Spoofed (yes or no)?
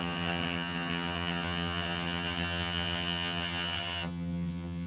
yes